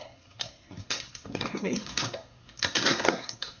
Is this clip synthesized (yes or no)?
yes